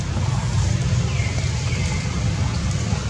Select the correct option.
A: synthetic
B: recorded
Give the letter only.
B